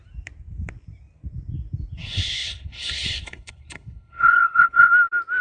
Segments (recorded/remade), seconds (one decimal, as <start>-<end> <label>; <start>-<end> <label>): 0.0-2.0 recorded; 2.0-4.9 remade; 4.9-5.4 recorded